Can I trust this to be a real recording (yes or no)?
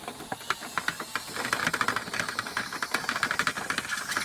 yes